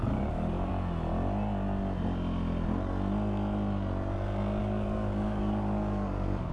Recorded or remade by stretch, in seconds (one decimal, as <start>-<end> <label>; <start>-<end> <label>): 0.0-0.7 remade; 0.7-4.6 recorded; 4.6-6.5 remade